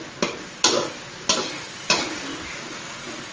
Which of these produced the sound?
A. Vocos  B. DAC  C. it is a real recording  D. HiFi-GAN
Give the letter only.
C